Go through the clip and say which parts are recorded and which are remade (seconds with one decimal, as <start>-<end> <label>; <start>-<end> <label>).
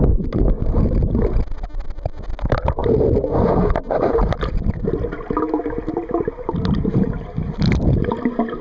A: 0.0-8.6 recorded